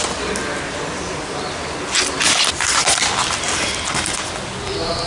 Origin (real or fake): real